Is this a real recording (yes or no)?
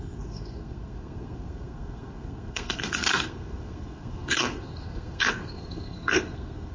no